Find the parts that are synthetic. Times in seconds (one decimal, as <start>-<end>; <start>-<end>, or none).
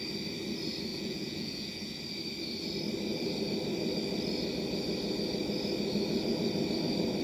0.9-2.0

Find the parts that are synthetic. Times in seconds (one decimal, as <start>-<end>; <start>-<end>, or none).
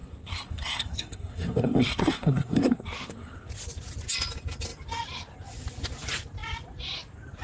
0.0-3.5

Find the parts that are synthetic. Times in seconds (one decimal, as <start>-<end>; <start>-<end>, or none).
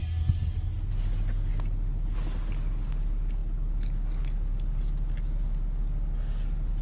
none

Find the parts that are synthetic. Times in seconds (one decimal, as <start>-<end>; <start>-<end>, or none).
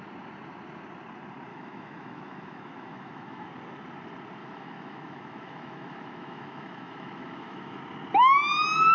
1.5-3.5; 4.4-7.8